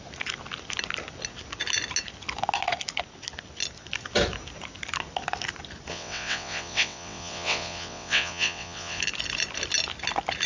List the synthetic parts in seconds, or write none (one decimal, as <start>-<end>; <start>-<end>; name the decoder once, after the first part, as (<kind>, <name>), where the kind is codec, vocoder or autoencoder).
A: 5.9-9.0 (vocoder, WaveNeXt)